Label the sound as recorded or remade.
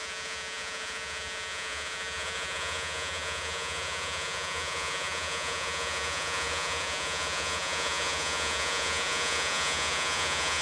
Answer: remade